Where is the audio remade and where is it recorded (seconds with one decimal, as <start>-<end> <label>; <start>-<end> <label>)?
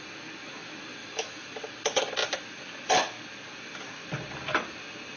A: 0.0-1.0 recorded; 1.0-1.5 remade; 1.5-5.2 recorded